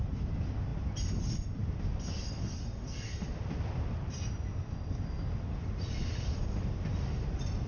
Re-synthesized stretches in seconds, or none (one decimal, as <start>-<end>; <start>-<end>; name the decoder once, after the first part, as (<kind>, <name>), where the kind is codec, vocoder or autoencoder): none